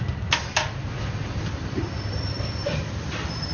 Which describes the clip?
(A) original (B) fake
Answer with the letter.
A